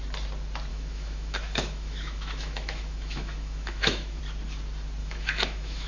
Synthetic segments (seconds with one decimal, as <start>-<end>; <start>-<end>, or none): 0.7-4.2; 5.0-5.9